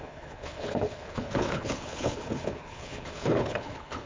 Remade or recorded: remade